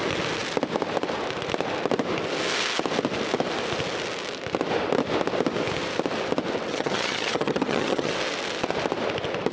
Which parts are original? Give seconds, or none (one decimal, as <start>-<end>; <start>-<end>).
0.0-6.7; 8.1-9.5